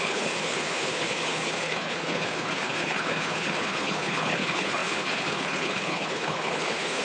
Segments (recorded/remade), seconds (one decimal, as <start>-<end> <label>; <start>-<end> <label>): 0.0-7.0 remade

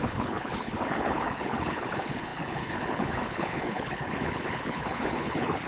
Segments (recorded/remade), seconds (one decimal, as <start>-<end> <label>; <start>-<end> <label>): 0.0-5.7 remade

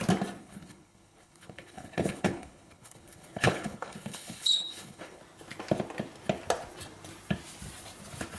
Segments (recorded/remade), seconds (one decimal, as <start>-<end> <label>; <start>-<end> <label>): 0.0-0.4 recorded; 0.4-5.2 remade; 5.2-8.4 recorded

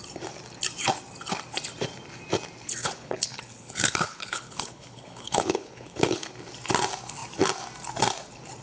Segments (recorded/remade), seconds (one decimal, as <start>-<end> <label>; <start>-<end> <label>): 0.0-2.8 recorded; 2.8-6.3 remade; 6.3-8.6 recorded

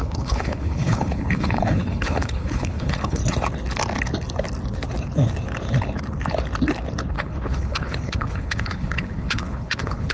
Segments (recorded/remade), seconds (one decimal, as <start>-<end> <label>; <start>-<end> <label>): 0.0-3.2 remade; 3.2-7.1 recorded; 7.1-10.1 remade

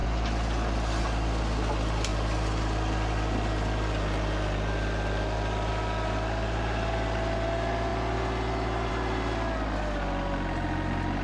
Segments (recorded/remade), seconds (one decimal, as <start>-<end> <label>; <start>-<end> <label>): 0.0-11.2 recorded

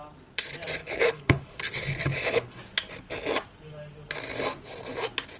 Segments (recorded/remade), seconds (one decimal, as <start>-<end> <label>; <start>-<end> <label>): 0.0-0.8 recorded; 0.8-2.6 remade; 2.6-5.4 recorded